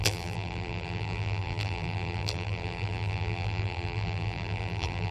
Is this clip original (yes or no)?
no